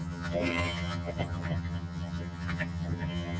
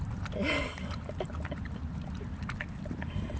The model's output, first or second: first